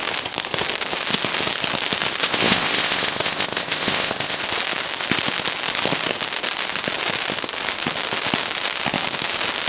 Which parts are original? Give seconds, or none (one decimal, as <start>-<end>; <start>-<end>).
0.0-2.2; 4.4-9.7